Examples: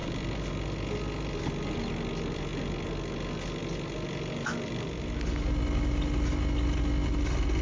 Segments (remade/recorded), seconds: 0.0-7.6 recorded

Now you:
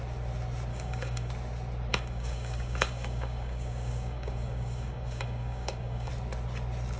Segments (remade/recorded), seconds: 0.0-0.7 recorded; 0.7-1.3 remade; 1.3-1.9 recorded; 1.9-6.1 remade; 6.1-7.0 recorded